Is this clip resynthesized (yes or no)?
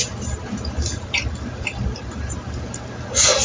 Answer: no